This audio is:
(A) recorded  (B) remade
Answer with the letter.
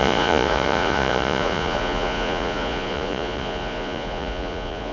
B